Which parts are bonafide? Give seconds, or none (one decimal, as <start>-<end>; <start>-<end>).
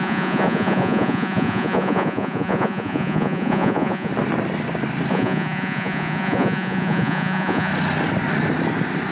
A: 4.1-5.1; 7.7-9.1